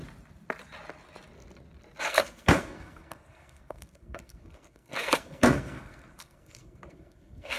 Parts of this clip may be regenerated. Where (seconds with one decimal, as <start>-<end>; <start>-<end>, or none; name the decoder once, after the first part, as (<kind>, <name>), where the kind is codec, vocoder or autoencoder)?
2.0-7.6 (codec, SNAC)